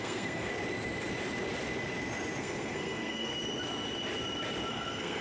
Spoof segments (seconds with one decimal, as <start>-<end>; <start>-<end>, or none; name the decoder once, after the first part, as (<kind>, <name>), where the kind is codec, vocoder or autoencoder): 0.0-0.5 (codec, SNAC); 2.4-3.3; 4.7-5.2